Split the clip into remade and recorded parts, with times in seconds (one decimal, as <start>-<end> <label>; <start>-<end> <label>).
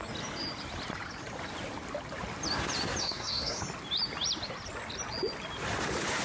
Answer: 0.0-3.0 recorded; 3.0-3.6 remade; 3.6-6.2 recorded